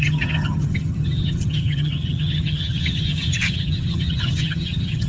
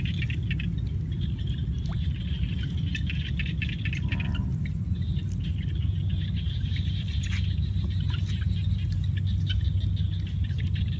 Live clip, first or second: second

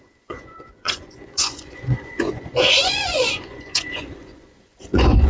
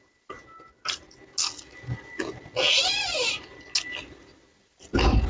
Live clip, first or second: second